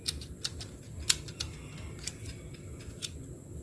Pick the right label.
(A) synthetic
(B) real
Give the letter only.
B